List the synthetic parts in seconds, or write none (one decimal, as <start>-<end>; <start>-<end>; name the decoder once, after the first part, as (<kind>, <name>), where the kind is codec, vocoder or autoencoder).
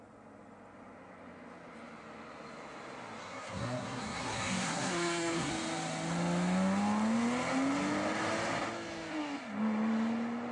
3.2-5.5 (codec, SNAC)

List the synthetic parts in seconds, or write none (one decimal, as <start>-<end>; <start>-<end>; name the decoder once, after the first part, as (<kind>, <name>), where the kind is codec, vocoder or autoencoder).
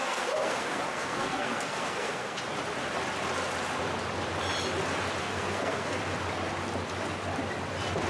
0.0-2.4 (codec, SNAC); 5.2-6.0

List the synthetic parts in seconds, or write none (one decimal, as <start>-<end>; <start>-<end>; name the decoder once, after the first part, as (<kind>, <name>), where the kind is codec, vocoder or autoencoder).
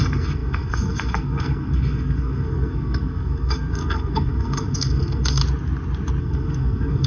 0.0-5.4 (codec, SNAC); 6.2-7.1